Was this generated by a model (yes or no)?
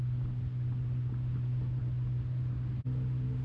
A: no